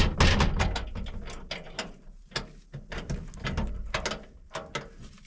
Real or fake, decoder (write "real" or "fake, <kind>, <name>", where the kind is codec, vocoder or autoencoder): real